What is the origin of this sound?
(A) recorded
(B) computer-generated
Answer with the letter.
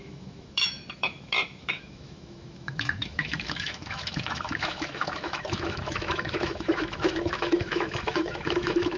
B